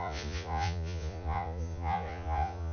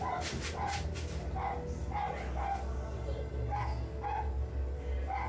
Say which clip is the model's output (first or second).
first